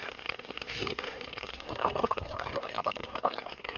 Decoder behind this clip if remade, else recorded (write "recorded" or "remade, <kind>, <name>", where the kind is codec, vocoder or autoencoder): remade, codec, SNAC